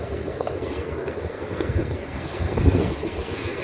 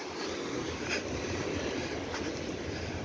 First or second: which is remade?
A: first